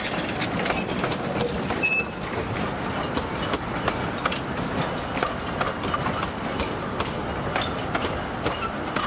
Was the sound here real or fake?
real